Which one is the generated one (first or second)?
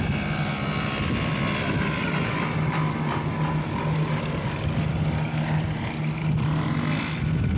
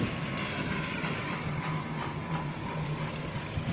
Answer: second